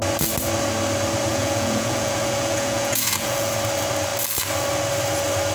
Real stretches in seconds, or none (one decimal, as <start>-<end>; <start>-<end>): 0.0-1.3; 3.5-5.5